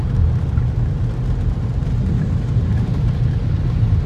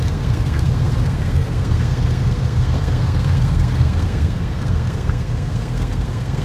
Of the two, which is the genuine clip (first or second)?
first